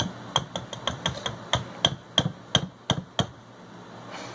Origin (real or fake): real